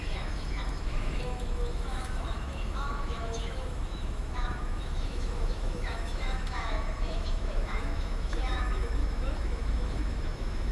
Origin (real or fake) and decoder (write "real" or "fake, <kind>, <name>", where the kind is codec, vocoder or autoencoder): fake, autoencoder, DAC-VAE